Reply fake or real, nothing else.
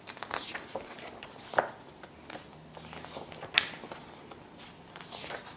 real